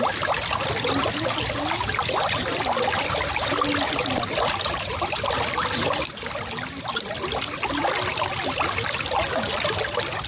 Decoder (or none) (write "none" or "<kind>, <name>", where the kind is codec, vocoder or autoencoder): none